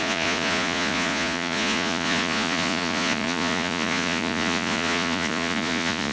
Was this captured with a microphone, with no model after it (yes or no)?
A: no